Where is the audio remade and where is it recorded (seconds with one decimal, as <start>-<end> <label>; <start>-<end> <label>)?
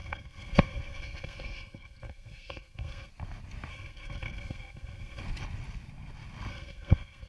0.0-3.1 remade; 3.1-3.7 recorded; 3.7-5.2 remade; 5.2-6.5 recorded; 6.5-7.3 remade